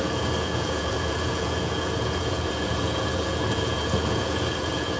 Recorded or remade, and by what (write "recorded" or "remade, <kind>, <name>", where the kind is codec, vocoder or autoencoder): remade, vocoder, Vocos